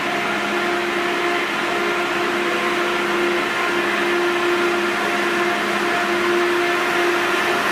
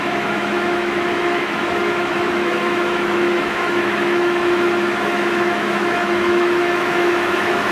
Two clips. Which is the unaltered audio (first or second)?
first